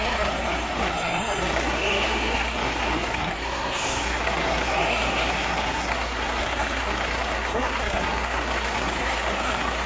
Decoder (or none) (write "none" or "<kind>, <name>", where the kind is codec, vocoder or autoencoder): codec, SNAC